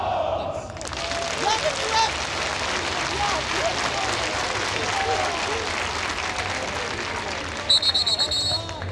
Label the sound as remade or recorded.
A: recorded